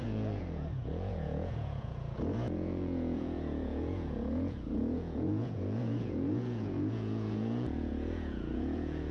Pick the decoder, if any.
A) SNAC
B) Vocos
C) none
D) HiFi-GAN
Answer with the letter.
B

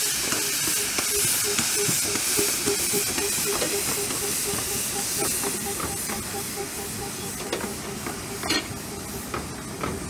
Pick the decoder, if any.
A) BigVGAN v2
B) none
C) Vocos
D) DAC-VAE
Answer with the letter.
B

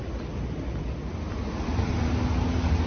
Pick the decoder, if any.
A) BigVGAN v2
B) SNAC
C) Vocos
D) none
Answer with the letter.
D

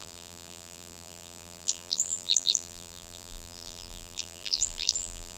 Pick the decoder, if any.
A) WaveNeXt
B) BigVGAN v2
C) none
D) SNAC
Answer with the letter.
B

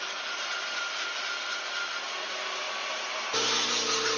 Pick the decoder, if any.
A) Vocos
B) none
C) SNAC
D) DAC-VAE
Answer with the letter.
B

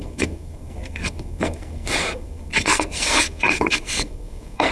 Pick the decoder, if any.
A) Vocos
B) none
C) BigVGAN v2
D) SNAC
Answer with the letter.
D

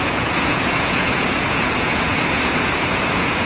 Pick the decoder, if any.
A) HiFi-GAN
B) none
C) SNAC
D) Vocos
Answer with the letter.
D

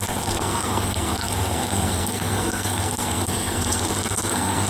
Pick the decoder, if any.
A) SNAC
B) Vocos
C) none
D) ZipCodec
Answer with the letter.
A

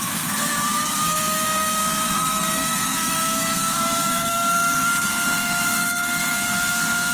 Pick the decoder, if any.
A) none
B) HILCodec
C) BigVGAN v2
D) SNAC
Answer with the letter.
D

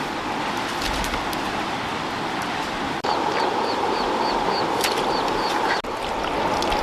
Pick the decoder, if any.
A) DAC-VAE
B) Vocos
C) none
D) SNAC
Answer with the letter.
C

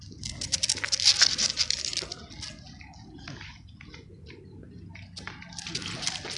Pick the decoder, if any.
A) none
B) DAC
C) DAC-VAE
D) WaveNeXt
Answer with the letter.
A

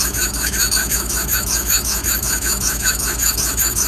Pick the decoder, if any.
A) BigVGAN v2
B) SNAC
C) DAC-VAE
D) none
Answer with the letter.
C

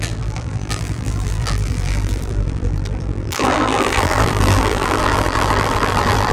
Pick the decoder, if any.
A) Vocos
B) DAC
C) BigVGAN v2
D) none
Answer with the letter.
C